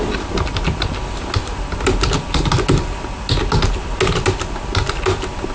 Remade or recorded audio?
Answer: recorded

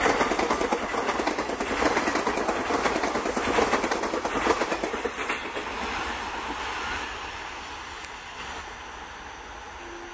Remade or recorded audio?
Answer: recorded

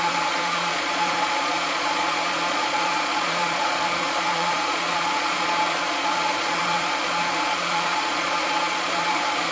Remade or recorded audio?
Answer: remade